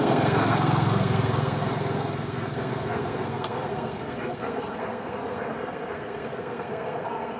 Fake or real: fake